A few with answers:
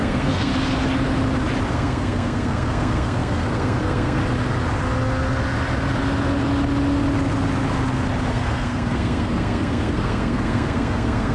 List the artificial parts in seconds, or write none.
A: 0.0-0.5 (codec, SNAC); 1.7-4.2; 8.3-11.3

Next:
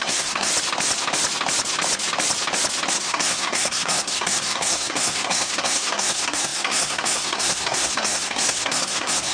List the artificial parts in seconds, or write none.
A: 0.0-0.5 (codec, SNAC); 2.9-9.3

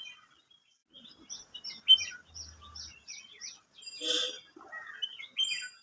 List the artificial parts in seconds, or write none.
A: none

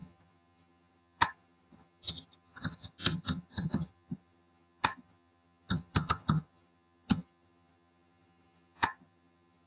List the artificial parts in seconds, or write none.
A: 0.0-9.7 (vocoder, HiFi-GAN)

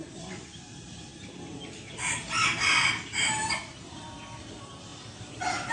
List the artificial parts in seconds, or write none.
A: 0.0-1.1 (vocoder, BigVGAN v2); 4.5-5.7

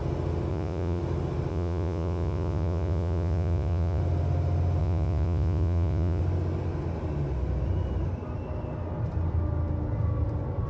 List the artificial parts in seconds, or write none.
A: 0.5-1.0 (vocoder, Vocos); 1.5-4.0; 4.8-6.2

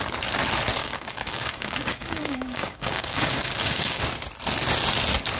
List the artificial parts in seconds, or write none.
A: 0.8-4.0 (codec, DAC)